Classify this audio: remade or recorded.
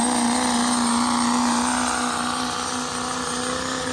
recorded